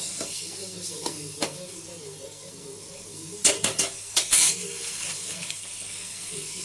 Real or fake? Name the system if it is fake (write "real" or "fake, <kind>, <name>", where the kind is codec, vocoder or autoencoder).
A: fake, codec, SNAC